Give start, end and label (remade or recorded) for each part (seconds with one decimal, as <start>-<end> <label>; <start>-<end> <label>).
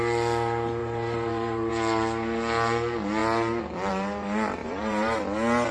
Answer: 0.0-0.8 recorded; 0.8-1.7 remade; 1.7-4.6 recorded; 4.6-5.2 remade; 5.2-5.7 recorded